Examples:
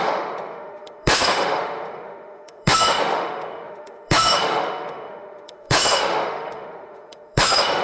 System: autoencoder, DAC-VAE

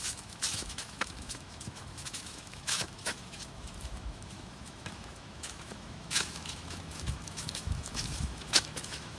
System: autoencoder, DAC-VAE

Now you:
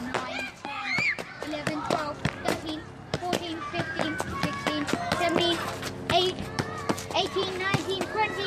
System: none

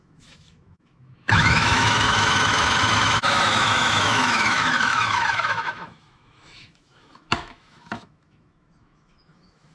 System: autoencoder, DAC-VAE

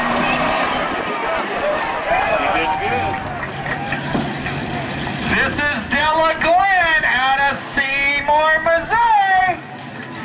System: none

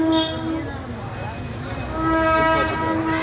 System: none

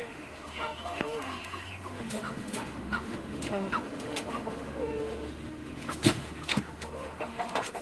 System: autoencoder, DAC-VAE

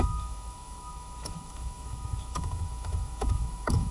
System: autoencoder, DAC-VAE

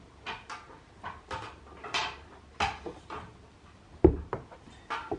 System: none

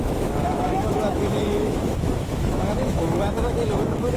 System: autoencoder, DAC-VAE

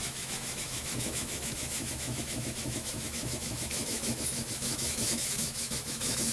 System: autoencoder, DAC-VAE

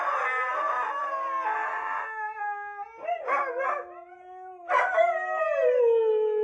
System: none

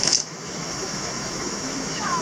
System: autoencoder, DAC-VAE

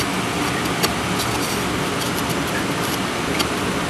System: none